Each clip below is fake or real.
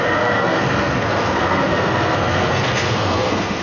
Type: fake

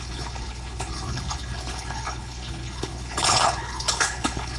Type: fake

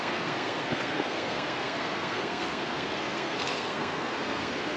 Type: fake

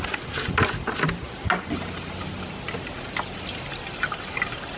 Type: real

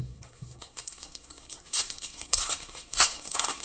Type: fake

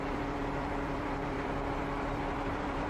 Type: fake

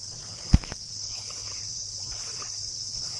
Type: fake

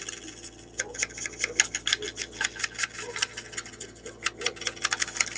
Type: real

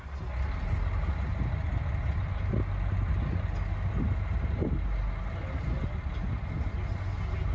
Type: real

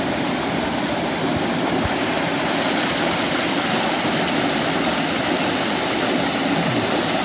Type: real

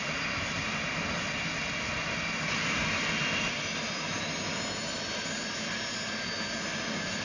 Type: real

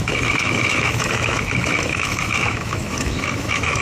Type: fake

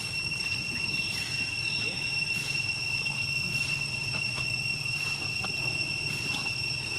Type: fake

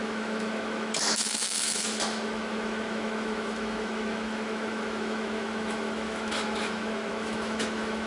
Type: fake